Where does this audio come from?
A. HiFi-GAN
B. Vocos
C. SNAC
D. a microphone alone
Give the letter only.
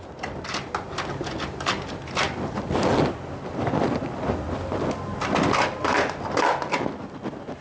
D